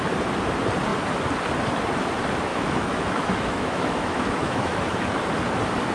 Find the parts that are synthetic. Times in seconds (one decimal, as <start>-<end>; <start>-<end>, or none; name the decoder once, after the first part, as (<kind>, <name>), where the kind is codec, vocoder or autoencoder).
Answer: 2.5-5.2 (autoencoder, DAC-VAE)